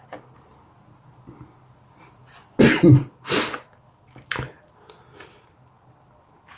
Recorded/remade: recorded